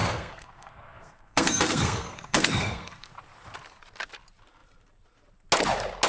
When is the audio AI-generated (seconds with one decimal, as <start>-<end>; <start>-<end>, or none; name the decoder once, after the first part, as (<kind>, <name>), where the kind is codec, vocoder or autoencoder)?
0.0-3.1 (codec, SNAC)